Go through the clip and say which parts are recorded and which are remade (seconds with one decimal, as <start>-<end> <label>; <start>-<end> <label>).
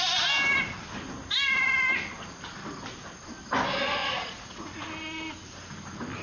0.0-4.0 recorded; 4.0-4.7 remade; 4.7-6.2 recorded